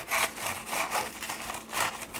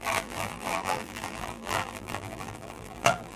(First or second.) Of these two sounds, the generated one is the second